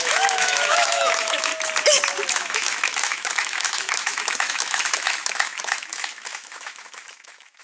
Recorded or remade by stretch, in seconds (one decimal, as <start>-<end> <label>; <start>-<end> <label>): 0.0-1.5 remade; 1.5-2.3 recorded; 2.3-7.6 remade